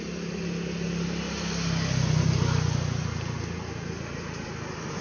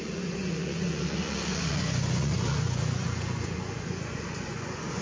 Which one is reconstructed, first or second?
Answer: second